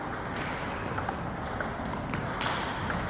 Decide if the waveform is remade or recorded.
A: recorded